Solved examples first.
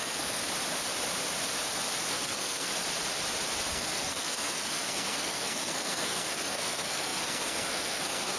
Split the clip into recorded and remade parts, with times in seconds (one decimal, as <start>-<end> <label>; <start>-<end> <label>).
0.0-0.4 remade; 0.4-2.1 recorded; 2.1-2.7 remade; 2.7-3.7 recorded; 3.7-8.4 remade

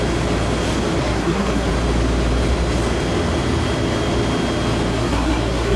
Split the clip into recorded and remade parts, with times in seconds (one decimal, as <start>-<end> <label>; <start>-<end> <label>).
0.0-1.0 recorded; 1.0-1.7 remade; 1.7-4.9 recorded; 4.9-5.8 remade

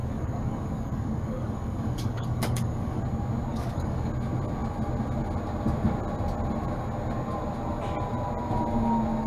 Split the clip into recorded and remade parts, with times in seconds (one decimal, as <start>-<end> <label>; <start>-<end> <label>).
0.0-3.0 remade; 3.0-3.5 recorded; 3.5-4.1 remade; 4.1-9.3 recorded

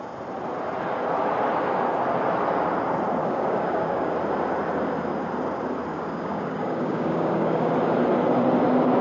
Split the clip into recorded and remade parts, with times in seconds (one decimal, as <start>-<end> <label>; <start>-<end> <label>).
0.0-3.2 recorded; 3.2-4.1 remade; 4.1-5.9 recorded; 5.9-7.7 remade; 7.7-9.0 recorded

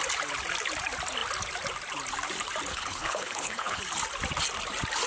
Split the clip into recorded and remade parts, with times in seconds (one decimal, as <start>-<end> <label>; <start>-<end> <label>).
0.0-2.7 recorded; 2.7-3.8 remade; 3.8-5.1 recorded

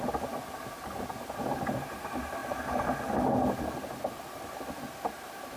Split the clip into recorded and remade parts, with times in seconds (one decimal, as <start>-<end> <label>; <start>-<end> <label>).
0.0-5.6 recorded